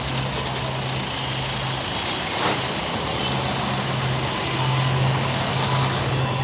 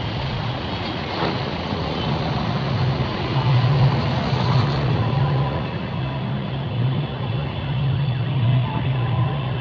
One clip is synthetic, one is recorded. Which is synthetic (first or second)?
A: second